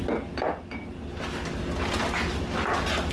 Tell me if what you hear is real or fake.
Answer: real